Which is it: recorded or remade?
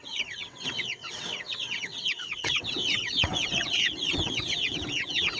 remade